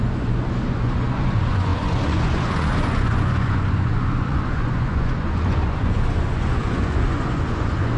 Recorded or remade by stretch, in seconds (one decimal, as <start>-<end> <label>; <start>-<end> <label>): 0.0-8.0 remade